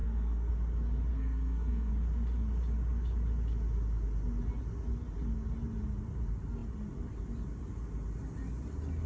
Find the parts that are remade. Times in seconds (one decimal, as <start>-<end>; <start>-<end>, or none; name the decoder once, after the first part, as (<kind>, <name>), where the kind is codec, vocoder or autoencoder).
0.0-0.5 (codec, SNAC); 1.1-1.9